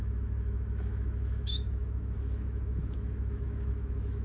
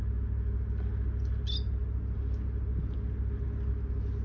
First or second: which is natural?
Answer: second